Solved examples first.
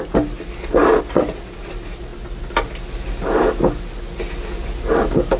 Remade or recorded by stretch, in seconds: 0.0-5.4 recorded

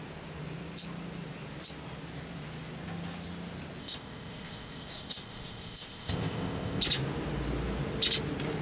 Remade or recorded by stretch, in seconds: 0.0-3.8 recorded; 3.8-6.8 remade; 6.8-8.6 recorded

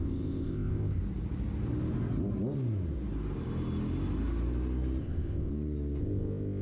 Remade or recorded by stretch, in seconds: 0.0-1.0 remade; 1.0-5.0 recorded; 5.0-5.5 remade; 5.5-6.0 recorded; 6.0-6.6 remade

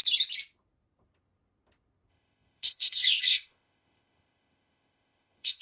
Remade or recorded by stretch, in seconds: 0.0-2.1 recorded; 2.1-5.6 remade

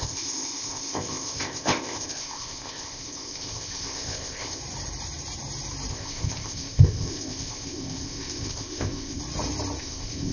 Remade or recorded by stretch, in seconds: 0.0-4.6 remade; 4.6-5.9 recorded; 5.9-9.2 remade; 9.2-9.8 recorded; 9.8-10.3 remade